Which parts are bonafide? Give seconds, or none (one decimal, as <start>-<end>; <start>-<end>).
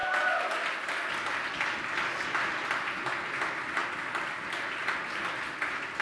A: 0.0-6.0